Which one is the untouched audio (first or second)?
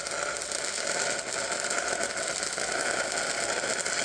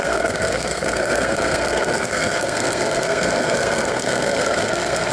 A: first